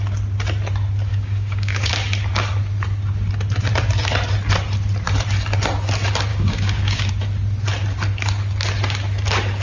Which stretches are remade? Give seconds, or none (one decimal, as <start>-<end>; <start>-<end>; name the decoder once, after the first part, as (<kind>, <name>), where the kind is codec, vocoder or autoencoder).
1.1-1.9 (codec, DAC); 6.3-7.1